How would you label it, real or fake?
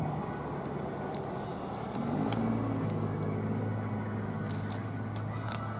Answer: real